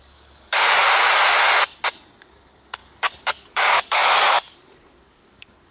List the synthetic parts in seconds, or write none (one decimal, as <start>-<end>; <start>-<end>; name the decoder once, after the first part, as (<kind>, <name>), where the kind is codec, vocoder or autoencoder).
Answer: 0.0-0.8 (codec, DAC); 2.2-5.7